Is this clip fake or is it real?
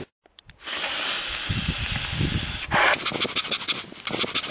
real